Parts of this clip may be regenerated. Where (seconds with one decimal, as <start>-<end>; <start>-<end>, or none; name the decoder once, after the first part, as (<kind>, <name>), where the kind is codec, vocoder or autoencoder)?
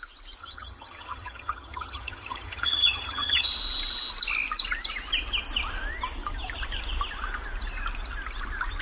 0.4-3.5 (vocoder, HiFi-GAN)